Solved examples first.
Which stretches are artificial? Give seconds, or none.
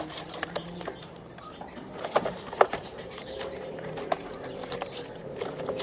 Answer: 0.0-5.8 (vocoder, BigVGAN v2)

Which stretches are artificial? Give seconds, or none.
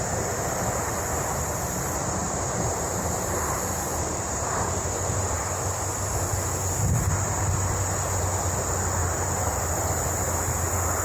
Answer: 2.2-5.4 (vocoder, BigVGAN v2); 9.0-9.6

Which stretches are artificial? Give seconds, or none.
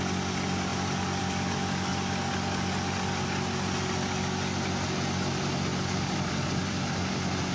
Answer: 5.7-7.1 (vocoder, BigVGAN v2)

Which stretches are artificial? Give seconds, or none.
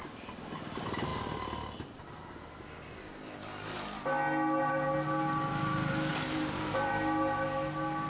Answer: 6.1-6.9 (vocoder, BigVGAN v2)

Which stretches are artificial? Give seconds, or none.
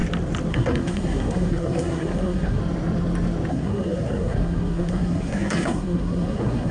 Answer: 0.5-2.6 (codec, SNAC); 3.5-6.7